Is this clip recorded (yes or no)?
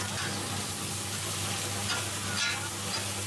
yes